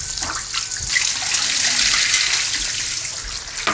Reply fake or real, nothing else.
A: real